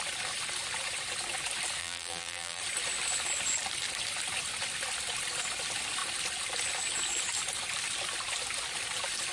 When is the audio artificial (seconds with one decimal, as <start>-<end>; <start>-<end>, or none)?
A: 1.8-2.6